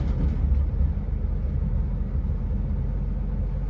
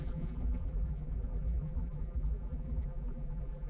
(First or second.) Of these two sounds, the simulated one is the second